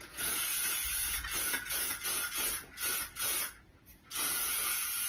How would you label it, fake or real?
fake